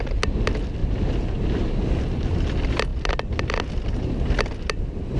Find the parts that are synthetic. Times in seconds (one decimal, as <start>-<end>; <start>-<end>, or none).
0.8-1.7